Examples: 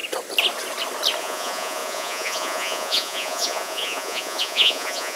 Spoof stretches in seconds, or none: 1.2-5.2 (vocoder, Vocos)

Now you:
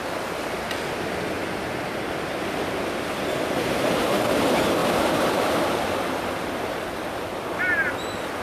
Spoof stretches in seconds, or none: 1.4-3.5 (vocoder, BigVGAN v2); 4.8-7.9

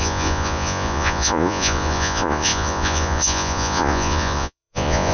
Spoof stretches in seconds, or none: 0.0-5.1 (vocoder, Vocos)

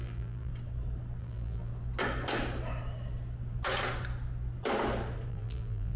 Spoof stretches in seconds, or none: 0.0-0.5 (vocoder, BigVGAN v2); 1.2-1.7; 5.3-6.0

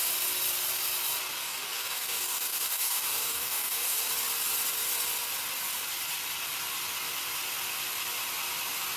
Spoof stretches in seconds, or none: 1.4-4.1 (codec, DAC)

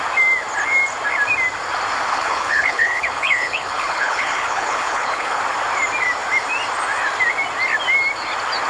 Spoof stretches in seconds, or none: 2.1-5.4 (codec, HILCodec)

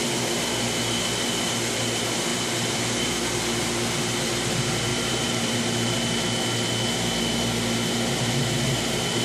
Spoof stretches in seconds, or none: 2.3-3.0 (vocoder, BigVGAN v2); 4.9-5.6